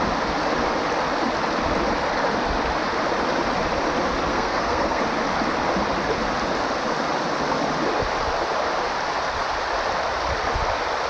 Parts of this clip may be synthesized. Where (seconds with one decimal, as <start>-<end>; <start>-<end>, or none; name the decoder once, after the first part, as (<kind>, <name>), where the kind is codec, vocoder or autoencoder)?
4.3-5.0 (codec, SNAC)